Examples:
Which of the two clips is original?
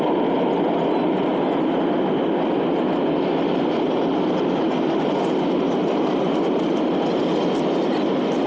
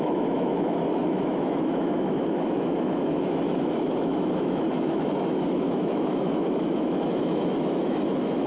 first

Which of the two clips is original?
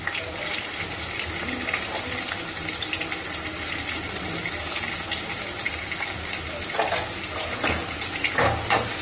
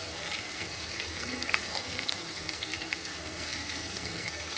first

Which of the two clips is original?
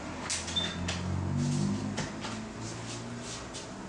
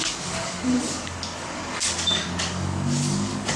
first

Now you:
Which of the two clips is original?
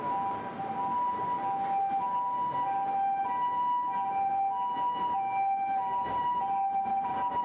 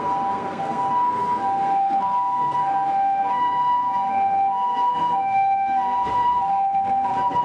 first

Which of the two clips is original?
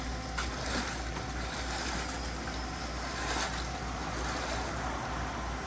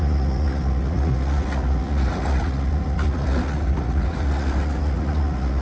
first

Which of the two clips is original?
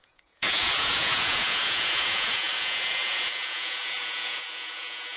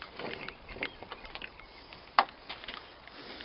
second